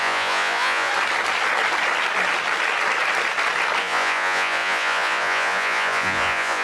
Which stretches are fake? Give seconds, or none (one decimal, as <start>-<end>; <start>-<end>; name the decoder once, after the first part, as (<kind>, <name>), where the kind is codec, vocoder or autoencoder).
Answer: 0.0-0.9 (vocoder, Vocos); 3.8-6.6